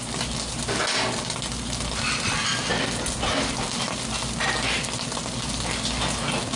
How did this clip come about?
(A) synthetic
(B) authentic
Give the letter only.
B